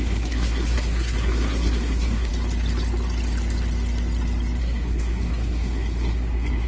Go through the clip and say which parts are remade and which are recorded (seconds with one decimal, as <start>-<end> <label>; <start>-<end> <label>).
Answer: 0.0-2.3 remade; 2.3-4.6 recorded; 4.6-6.7 remade